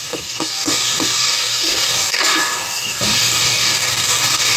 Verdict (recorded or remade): remade